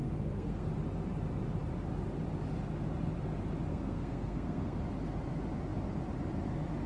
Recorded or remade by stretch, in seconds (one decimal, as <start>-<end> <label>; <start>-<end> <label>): 0.0-0.7 remade; 0.7-3.7 recorded; 3.7-4.8 remade; 4.8-6.9 recorded